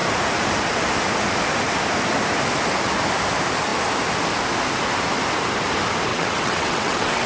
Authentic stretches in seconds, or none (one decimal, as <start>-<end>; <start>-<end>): 0.0-6.1